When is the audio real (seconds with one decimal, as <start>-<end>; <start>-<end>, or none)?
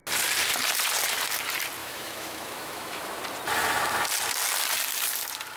0.0-1.8; 3.2-5.6